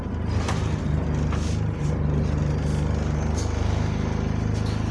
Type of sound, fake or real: real